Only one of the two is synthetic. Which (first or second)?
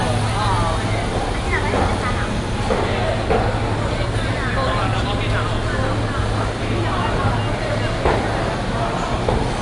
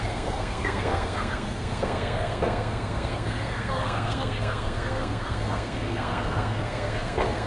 second